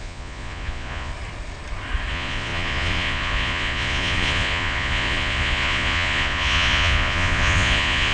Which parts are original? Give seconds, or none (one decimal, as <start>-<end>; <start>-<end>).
1.1-2.1